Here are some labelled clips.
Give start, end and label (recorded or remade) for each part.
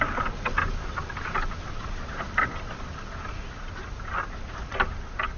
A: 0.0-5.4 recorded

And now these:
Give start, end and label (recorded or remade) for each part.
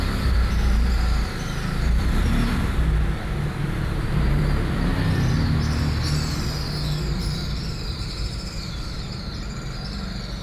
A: 0.0-4.9 remade; 4.9-7.0 recorded; 7.0-10.4 remade